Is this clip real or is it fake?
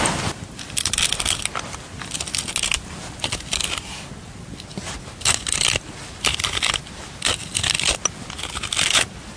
real